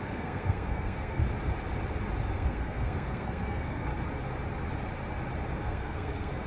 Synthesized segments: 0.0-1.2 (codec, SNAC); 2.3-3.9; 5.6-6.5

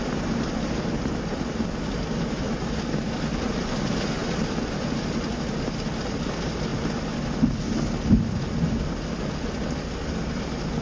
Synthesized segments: none